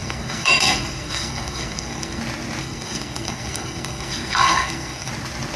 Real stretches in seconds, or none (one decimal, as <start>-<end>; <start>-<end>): 2.2-2.6; 5.1-5.6